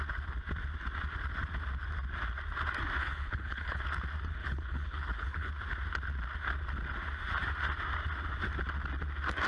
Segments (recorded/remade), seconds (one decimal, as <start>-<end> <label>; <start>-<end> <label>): 0.0-3.0 recorded; 3.0-3.8 remade; 3.8-4.4 recorded; 4.4-5.5 remade; 5.5-9.5 recorded